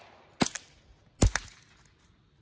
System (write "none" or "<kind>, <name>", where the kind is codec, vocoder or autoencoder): none